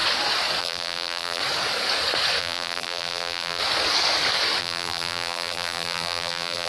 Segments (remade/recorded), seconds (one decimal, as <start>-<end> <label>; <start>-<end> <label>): 0.0-0.6 recorded; 0.6-1.4 remade; 1.4-2.4 recorded; 2.4-3.6 remade; 3.6-4.6 recorded; 4.6-6.7 remade

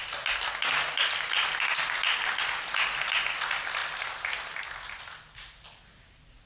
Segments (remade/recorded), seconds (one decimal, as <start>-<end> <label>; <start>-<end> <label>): 0.0-6.5 recorded